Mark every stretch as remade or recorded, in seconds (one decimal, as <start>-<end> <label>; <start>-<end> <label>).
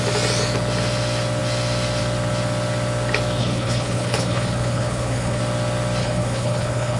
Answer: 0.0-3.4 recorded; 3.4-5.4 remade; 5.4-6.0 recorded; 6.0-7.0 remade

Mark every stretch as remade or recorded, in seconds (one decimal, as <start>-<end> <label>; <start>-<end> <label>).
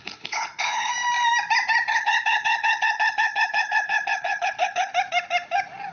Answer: 0.0-0.9 remade; 0.9-1.9 recorded; 1.9-4.9 remade; 4.9-5.9 recorded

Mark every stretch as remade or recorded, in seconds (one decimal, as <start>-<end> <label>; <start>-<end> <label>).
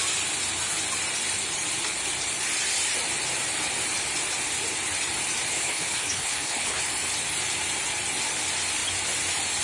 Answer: 0.0-5.5 recorded; 5.5-6.8 remade; 6.8-9.6 recorded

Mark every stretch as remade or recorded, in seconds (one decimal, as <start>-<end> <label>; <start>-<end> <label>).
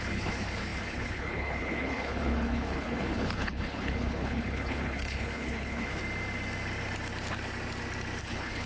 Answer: 0.0-6.0 remade; 6.0-8.2 recorded; 8.2-8.7 remade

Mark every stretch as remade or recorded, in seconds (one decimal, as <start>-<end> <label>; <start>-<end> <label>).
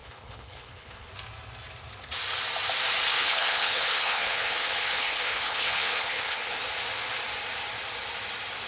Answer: 0.0-1.1 remade; 1.1-3.1 recorded; 3.1-6.6 remade; 6.6-8.7 recorded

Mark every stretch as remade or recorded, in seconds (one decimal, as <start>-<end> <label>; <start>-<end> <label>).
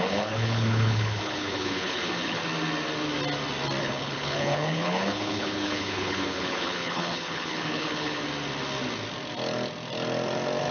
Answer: 0.0-2.4 remade; 2.4-3.8 recorded; 3.8-8.2 remade; 8.2-10.7 recorded